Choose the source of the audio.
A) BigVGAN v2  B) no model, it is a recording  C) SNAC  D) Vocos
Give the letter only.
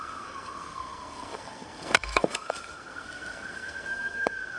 C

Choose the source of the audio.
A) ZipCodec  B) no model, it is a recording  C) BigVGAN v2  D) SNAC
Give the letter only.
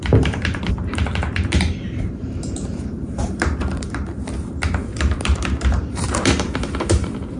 C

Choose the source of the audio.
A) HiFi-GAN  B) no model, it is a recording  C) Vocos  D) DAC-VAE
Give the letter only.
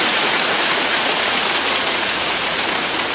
C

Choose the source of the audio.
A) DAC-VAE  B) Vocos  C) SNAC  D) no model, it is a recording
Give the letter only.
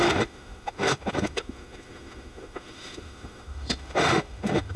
A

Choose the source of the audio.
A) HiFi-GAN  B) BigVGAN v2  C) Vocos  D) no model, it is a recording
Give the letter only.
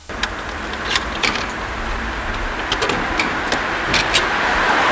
D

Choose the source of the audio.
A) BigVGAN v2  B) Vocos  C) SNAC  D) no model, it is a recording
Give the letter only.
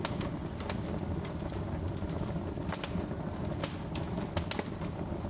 D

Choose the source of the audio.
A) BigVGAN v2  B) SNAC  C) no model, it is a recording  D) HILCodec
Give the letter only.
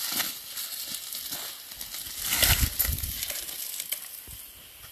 C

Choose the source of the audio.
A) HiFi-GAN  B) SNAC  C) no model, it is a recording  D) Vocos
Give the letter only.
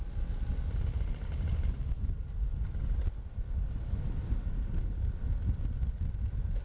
C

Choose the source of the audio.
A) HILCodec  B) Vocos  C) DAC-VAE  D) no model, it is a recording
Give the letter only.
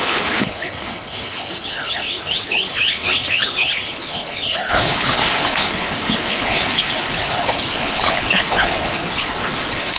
A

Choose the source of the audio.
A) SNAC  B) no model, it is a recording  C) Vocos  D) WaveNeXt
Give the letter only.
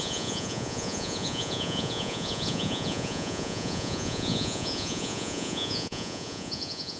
C